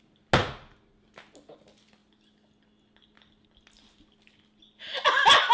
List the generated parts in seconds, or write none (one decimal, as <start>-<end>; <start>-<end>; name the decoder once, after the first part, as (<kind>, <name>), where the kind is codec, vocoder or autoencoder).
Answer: none